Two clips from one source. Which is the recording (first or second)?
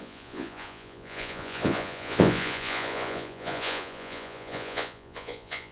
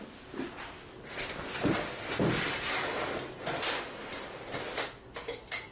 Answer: second